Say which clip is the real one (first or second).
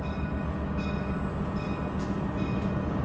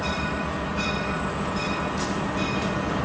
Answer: first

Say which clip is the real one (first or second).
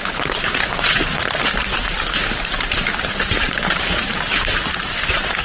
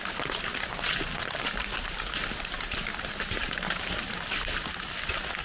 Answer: second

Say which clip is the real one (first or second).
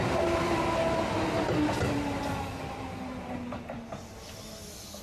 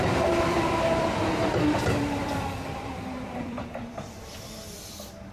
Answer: first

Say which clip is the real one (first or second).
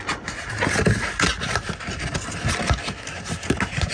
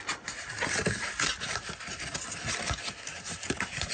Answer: first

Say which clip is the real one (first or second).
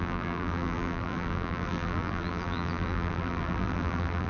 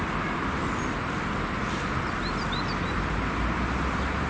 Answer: second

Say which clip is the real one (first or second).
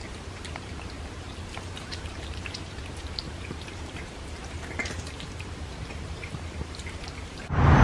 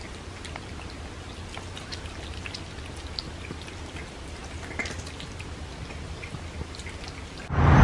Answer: second